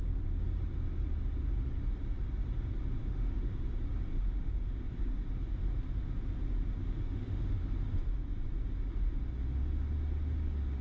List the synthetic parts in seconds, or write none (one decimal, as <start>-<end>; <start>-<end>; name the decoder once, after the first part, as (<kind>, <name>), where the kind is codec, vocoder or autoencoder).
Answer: 3.0-3.6 (autoencoder, DAC-VAE); 4.1-4.9; 6.8-7.7